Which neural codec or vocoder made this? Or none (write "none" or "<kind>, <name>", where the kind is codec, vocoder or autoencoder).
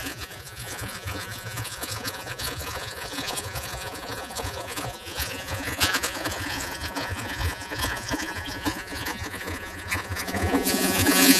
vocoder, Vocos